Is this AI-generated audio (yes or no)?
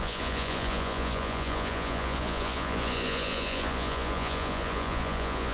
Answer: yes